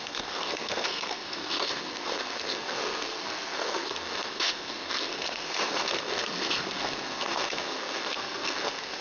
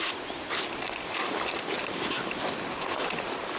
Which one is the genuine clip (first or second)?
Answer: second